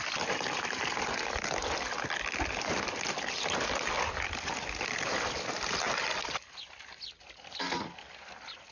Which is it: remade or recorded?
recorded